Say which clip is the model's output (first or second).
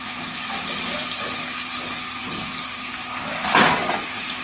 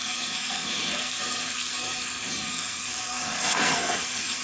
second